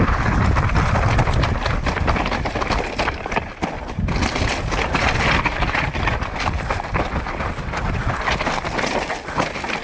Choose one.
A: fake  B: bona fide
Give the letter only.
B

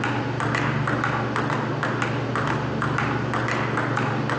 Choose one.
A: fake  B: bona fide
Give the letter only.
B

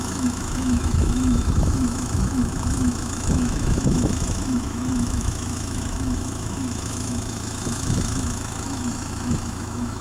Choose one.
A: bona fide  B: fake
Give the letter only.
B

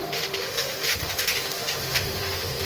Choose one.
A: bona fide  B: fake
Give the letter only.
B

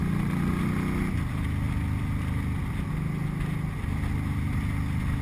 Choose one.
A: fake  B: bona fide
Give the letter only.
B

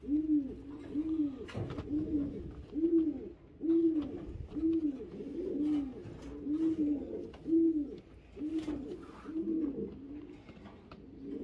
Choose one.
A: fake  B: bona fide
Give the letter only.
B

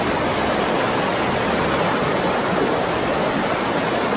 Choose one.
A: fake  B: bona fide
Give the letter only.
B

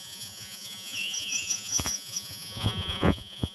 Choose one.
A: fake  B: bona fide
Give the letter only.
A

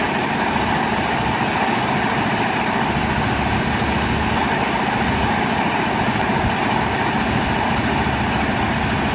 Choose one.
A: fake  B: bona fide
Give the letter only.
B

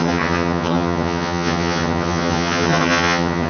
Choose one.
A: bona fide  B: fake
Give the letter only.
B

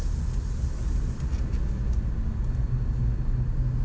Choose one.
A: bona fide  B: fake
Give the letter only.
A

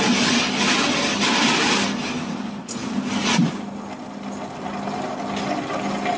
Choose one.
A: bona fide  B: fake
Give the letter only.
A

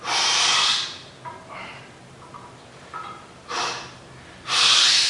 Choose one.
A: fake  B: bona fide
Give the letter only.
B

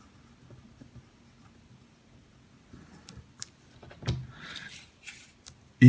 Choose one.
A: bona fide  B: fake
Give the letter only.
A